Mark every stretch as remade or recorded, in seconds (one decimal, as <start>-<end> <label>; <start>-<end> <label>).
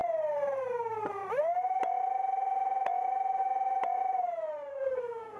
0.0-4.7 recorded; 4.7-5.4 remade